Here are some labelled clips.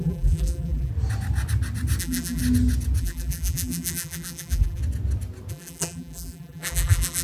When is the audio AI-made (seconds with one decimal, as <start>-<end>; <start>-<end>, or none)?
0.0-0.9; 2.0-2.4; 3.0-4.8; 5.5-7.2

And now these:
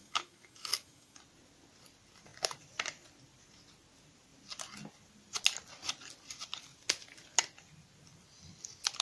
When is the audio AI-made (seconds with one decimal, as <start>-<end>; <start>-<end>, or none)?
0.0-1.2

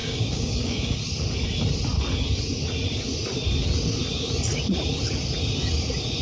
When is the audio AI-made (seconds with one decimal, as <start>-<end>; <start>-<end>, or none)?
0.0-1.0

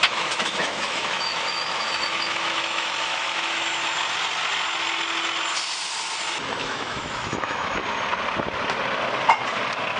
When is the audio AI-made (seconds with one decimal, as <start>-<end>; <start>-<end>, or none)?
0.0-3.8; 6.6-7.8

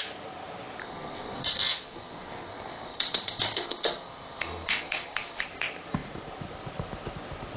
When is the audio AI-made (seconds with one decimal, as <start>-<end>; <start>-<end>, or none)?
0.8-5.4

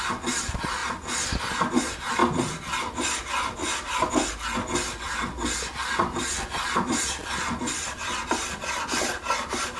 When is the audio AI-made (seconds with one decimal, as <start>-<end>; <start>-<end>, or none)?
none